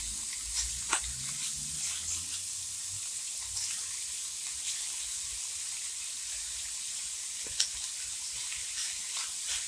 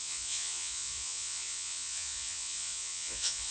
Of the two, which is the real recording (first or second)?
first